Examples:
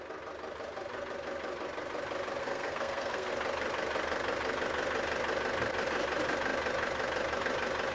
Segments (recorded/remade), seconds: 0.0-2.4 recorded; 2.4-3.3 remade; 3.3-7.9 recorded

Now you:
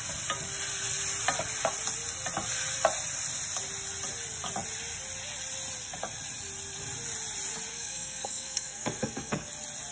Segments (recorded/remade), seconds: 0.0-7.7 recorded; 7.7-9.5 remade; 9.5-9.9 recorded

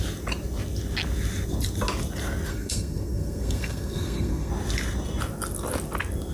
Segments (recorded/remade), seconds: 0.0-2.5 recorded; 2.5-4.5 remade; 4.5-6.3 recorded